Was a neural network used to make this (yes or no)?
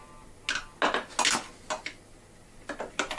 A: no